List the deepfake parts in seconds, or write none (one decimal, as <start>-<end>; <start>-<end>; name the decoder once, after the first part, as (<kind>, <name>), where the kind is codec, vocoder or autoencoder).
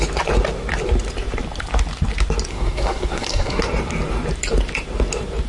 2.5-3.6 (codec, SNAC)